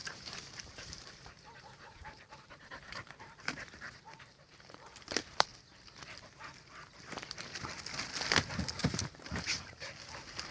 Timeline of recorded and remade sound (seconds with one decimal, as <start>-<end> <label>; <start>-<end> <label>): 0.0-5.5 remade; 5.5-8.8 recorded; 8.8-10.5 remade